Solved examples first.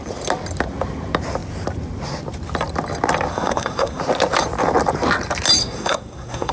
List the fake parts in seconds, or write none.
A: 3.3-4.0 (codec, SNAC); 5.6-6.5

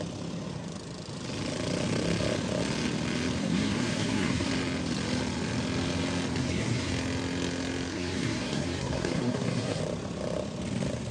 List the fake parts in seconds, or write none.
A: 3.4-4.5 (codec, SNAC); 6.4-6.9; 7.9-9.8

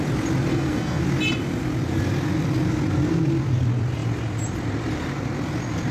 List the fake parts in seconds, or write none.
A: 0.5-1.0 (codec, SNAC)